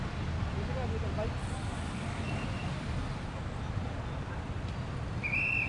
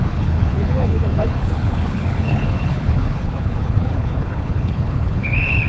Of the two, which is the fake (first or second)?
second